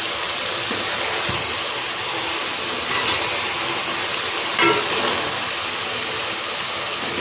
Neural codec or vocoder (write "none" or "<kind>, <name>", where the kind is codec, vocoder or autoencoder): none